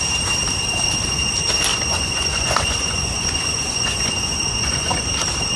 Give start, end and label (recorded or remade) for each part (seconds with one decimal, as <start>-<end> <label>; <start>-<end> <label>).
0.0-1.7 recorded; 1.7-5.1 remade; 5.1-5.6 recorded